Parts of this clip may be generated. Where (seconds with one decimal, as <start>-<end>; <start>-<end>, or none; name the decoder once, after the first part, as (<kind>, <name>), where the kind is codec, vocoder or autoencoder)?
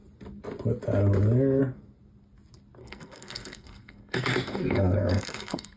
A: 2.8-5.8 (codec, SNAC)